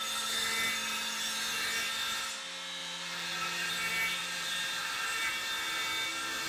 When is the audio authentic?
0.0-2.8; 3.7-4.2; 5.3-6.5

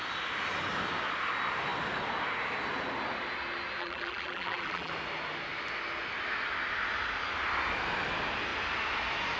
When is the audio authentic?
0.0-3.8; 4.9-9.4

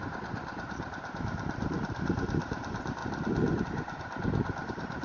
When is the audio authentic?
3.0-3.6

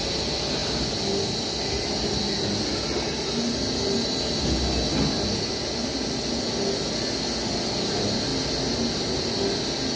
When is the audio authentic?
0.0-10.0